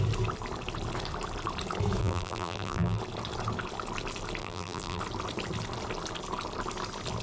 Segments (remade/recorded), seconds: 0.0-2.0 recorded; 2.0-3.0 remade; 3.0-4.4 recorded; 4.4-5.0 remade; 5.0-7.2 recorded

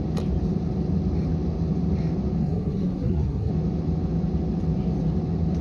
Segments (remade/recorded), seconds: 0.0-2.4 recorded; 2.4-3.5 remade; 3.5-5.6 recorded

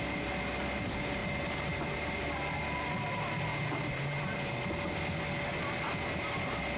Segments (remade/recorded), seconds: 0.0-1.2 recorded; 1.2-1.8 remade; 1.8-3.5 recorded; 3.5-4.5 remade; 4.5-6.8 recorded

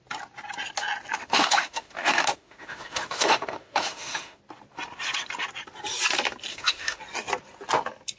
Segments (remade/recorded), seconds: 0.0-1.2 recorded; 1.2-4.4 remade; 4.4-6.5 recorded; 6.5-7.0 remade; 7.0-8.2 recorded